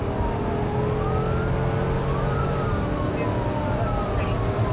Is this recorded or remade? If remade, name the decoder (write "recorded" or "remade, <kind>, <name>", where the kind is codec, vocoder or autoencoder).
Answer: recorded